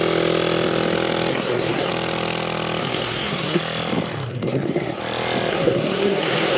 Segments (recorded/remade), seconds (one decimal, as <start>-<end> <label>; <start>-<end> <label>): 0.0-1.3 recorded; 1.3-1.9 remade; 1.9-2.8 recorded; 2.8-3.6 remade; 3.6-4.3 recorded; 4.3-5.0 remade; 5.0-5.5 recorded; 5.5-6.6 remade